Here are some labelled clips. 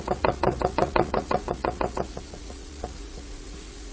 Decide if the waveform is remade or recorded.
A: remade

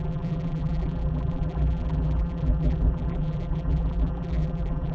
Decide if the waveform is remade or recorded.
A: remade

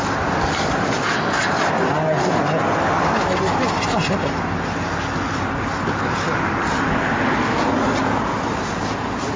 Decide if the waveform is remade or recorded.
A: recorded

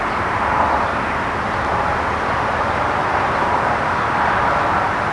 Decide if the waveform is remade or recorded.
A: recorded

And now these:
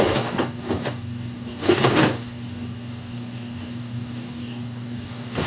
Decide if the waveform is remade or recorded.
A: remade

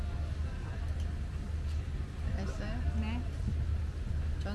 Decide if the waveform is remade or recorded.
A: recorded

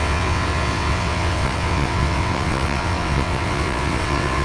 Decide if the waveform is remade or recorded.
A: remade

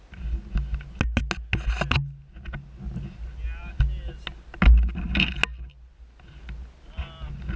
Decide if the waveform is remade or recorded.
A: recorded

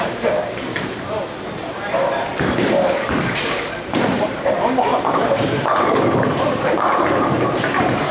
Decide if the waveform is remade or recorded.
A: remade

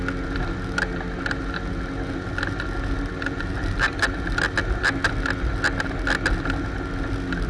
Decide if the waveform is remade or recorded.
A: recorded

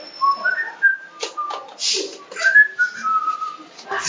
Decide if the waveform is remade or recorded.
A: recorded